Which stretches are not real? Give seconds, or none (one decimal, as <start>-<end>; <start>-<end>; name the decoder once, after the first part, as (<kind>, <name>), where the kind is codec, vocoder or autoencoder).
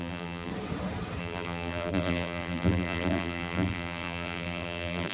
0.0-0.5 (vocoder, BigVGAN v2); 1.2-5.1